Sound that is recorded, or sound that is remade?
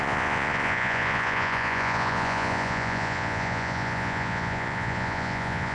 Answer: remade